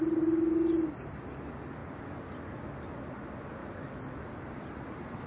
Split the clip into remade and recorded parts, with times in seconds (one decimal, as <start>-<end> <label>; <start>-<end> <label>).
0.0-3.6 recorded; 3.6-4.4 remade; 4.4-5.3 recorded